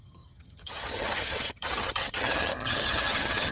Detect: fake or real fake